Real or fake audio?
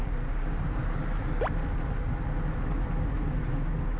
real